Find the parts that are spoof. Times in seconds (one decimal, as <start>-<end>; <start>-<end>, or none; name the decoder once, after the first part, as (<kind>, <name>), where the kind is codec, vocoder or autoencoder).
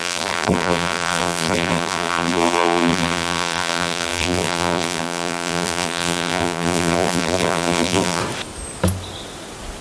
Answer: 0.0-8.2 (vocoder, BigVGAN v2)